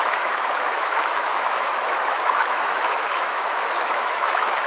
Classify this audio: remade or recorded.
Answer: remade